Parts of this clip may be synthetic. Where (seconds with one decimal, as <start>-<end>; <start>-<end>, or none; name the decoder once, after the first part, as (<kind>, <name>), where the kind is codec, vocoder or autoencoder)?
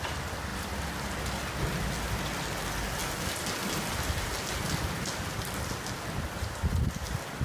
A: none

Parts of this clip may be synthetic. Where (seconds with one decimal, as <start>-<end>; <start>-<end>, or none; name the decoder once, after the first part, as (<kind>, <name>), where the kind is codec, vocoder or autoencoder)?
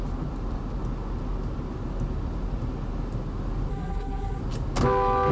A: 3.7-4.4 (codec, SNAC)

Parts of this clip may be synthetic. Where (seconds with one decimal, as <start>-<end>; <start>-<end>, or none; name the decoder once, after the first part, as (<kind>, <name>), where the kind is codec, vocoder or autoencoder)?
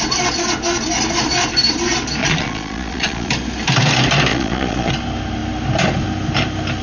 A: 2.2-3.3 (vocoder, Vocos); 4.3-4.9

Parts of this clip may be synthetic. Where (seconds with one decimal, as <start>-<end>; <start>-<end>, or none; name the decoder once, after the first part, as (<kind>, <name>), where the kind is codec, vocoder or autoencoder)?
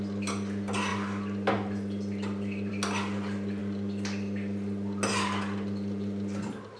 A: none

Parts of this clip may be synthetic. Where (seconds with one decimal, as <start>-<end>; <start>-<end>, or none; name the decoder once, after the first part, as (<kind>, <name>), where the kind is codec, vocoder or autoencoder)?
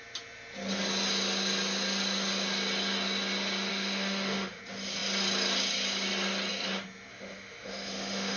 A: 3.7-4.6 (autoencoder, DAC-VAE); 7.1-8.4